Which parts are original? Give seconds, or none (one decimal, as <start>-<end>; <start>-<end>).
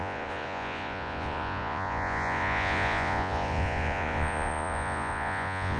none